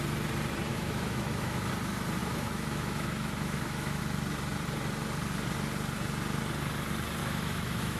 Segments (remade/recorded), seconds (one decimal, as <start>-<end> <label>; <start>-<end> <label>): 0.0-0.7 recorded; 0.7-1.7 remade; 1.7-2.2 recorded; 2.2-4.0 remade; 4.0-7.2 recorded; 7.2-8.0 remade